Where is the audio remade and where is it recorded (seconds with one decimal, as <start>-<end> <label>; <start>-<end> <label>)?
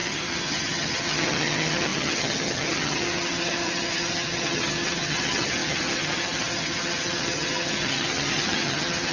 0.0-9.1 remade